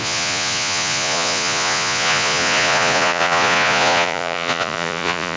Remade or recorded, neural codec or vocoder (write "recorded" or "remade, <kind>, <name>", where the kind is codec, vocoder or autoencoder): remade, vocoder, Vocos